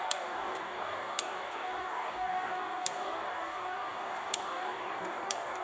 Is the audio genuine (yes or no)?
no